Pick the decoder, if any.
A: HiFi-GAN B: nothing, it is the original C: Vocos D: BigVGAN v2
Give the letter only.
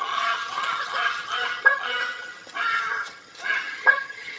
A